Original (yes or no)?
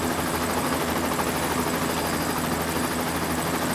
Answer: yes